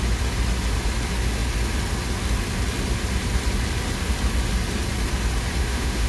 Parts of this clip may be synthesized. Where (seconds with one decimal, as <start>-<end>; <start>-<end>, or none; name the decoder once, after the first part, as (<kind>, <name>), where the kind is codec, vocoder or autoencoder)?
5.6-6.1 (autoencoder, DAC-VAE)